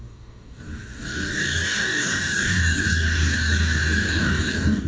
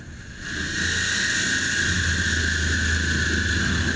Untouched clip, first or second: second